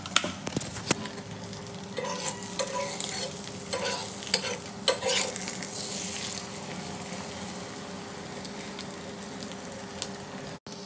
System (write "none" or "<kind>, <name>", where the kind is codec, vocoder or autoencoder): none